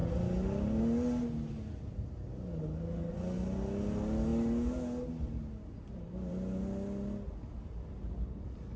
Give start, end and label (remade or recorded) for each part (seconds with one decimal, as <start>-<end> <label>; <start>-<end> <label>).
0.0-8.8 recorded